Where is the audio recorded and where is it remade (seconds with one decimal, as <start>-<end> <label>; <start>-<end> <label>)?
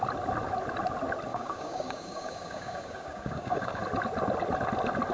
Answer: 0.0-1.3 recorded; 1.3-3.8 remade; 3.8-5.1 recorded